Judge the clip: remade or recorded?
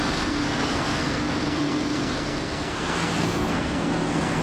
remade